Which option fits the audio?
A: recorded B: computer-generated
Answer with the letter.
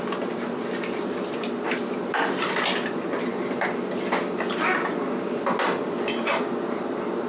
A